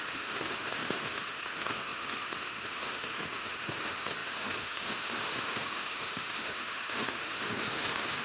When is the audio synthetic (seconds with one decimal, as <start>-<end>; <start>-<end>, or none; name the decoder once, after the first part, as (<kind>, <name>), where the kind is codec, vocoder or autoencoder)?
0.0-8.2 (autoencoder, DAC-VAE)